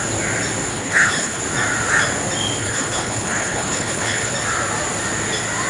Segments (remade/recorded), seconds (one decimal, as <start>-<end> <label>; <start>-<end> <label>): 0.0-0.7 recorded; 0.7-1.4 remade; 1.4-2.6 recorded; 2.6-4.3 remade; 4.3-5.7 recorded

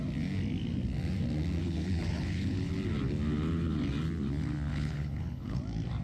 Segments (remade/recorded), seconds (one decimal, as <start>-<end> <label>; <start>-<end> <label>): 0.0-1.6 recorded; 1.6-2.7 remade; 2.7-4.7 recorded; 4.7-5.6 remade; 5.6-6.0 recorded

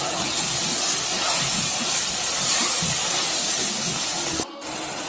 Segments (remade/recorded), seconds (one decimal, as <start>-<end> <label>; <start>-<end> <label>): 0.0-5.1 recorded

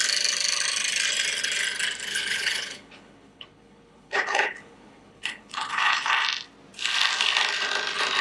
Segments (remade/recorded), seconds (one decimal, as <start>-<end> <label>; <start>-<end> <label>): 0.0-2.1 recorded; 2.1-6.1 remade; 6.1-8.2 recorded